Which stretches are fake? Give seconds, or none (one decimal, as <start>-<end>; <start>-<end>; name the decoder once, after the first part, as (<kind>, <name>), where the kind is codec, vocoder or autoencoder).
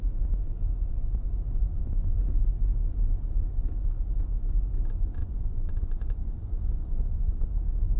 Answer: 0.7-1.3 (vocoder, Vocos); 5.2-7.4